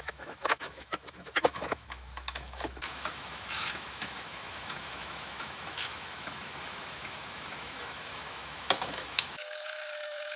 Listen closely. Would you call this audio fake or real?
fake